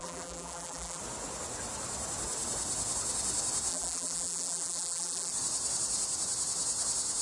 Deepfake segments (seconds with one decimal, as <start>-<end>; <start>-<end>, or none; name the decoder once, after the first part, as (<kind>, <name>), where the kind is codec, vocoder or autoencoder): 0.0-1.0 (vocoder, BigVGAN v2); 3.7-5.3